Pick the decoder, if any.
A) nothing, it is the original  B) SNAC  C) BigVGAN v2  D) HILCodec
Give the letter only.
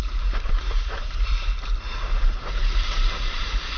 C